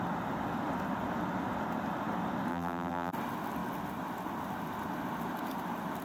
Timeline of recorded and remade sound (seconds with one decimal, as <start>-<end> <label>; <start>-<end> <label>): 0.0-2.5 recorded; 2.5-3.1 remade; 3.1-6.0 recorded

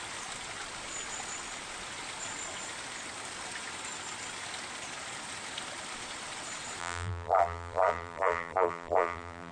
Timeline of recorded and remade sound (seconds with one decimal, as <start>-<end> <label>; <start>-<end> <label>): 0.0-6.8 recorded; 6.8-9.5 remade

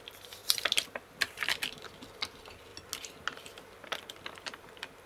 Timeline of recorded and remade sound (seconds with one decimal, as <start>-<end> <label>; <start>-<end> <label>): 0.0-2.7 remade; 2.7-3.8 recorded; 3.8-5.1 remade

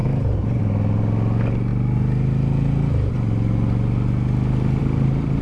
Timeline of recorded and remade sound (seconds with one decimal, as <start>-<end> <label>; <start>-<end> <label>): 0.0-0.6 remade; 0.6-5.4 recorded

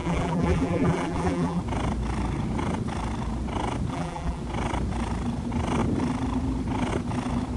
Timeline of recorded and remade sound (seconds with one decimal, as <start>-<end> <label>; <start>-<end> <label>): 0.0-1.6 remade; 1.6-3.9 recorded; 3.9-4.4 remade; 4.4-7.6 recorded

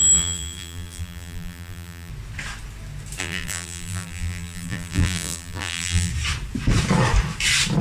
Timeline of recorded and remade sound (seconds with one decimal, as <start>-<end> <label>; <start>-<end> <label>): 0.0-2.1 remade; 2.1-3.2 recorded; 3.2-6.1 remade; 6.1-7.8 recorded

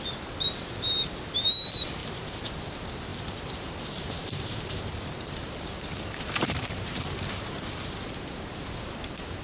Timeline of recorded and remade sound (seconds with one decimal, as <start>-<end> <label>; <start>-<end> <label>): 0.0-2.0 recorded; 2.0-2.5 remade; 2.5-3.1 recorded; 3.1-7.8 remade; 7.8-9.4 recorded